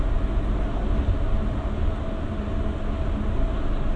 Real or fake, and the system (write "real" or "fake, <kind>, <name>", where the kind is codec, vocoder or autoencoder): real